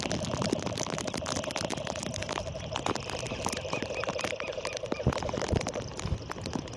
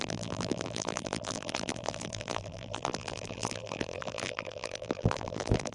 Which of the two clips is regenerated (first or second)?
second